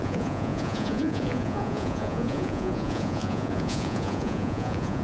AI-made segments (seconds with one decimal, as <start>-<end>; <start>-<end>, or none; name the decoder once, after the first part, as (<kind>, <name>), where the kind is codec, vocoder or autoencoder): 0.0-5.0 (vocoder, Vocos)